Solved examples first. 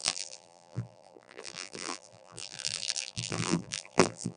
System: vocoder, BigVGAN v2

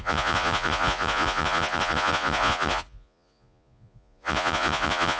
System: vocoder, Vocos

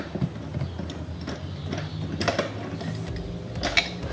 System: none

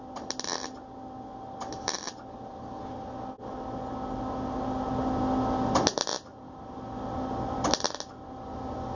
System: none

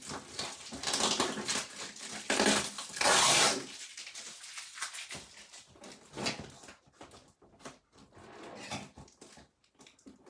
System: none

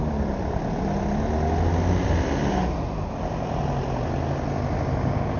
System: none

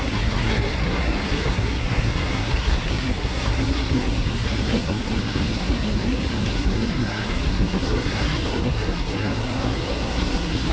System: codec, SNAC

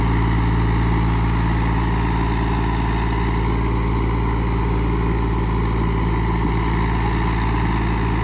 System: none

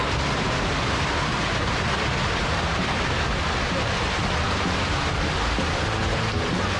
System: none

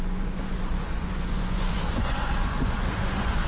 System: vocoder, Vocos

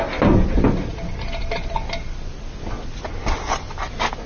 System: none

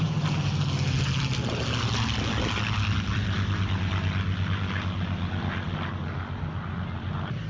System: none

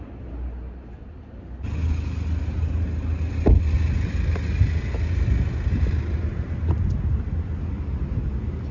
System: none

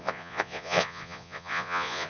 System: vocoder, Vocos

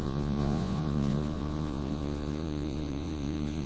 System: vocoder, Vocos